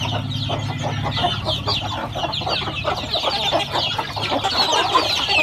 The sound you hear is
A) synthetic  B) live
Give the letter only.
B